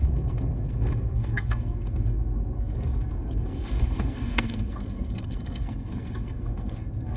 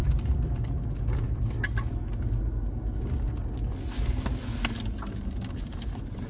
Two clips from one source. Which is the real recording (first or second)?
second